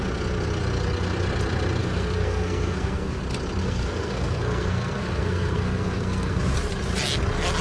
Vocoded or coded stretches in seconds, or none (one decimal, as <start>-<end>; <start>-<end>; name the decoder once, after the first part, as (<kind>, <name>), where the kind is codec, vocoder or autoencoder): 1.8-3.2 (codec, SNAC); 3.6-6.4